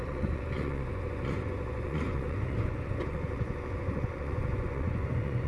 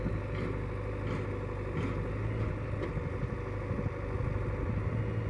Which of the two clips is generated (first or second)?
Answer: first